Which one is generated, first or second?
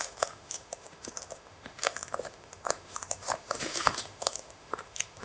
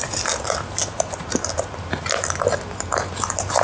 first